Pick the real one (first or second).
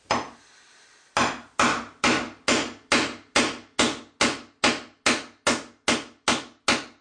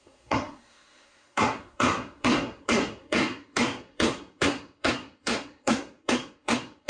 first